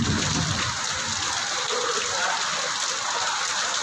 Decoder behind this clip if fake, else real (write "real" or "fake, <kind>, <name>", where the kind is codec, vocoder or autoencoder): real